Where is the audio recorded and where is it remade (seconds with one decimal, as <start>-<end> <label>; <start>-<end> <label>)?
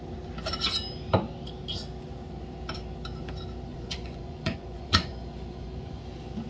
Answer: 0.0-3.7 recorded; 3.7-6.0 remade; 6.0-6.5 recorded